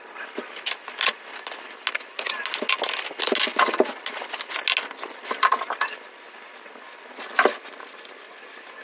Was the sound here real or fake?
real